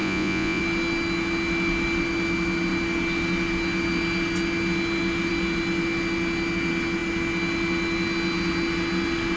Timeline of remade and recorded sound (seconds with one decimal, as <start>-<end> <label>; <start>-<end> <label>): 0.0-0.6 remade; 0.6-9.4 recorded